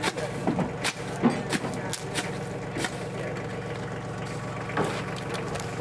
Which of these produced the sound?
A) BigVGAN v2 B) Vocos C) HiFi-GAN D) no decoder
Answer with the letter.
D